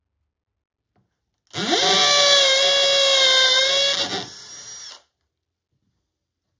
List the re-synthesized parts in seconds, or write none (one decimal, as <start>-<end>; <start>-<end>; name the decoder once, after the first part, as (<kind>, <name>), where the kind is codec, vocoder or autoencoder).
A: none